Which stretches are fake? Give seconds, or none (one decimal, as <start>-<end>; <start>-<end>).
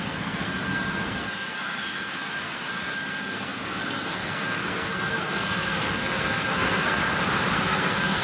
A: 0.0-7.0; 7.5-8.2